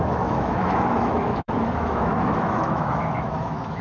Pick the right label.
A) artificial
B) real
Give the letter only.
A